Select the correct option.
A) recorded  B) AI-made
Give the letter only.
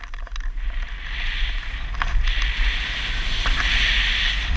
A